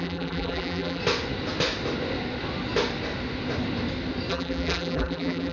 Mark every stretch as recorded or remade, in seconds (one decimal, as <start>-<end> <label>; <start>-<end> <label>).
0.0-1.0 remade; 1.0-4.3 recorded; 4.3-5.5 remade